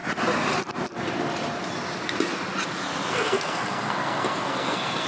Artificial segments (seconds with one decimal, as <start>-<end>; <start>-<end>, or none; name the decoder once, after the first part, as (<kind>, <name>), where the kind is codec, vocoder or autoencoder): 3.1-5.1 (codec, SNAC)